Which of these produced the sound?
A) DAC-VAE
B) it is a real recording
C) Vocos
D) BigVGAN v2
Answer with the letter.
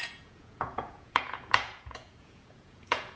C